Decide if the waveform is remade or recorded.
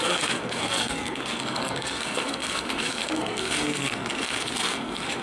remade